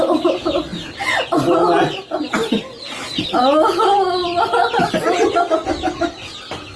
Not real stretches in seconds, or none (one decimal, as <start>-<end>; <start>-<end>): none